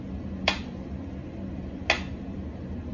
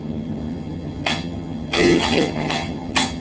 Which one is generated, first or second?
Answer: second